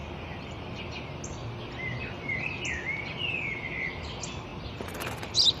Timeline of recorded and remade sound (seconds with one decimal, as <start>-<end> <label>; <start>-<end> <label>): 0.0-5.6 recorded